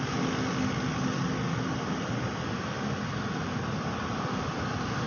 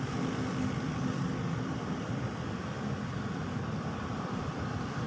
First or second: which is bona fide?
first